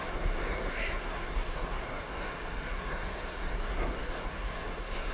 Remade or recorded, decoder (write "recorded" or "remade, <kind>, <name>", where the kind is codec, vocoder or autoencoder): remade, codec, SNAC